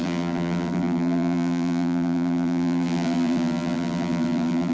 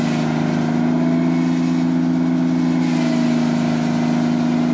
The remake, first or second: first